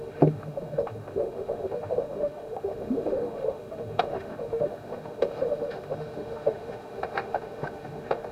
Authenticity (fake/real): fake